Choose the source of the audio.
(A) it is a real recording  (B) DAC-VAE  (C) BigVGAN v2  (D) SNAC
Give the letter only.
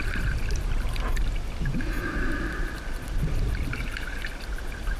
C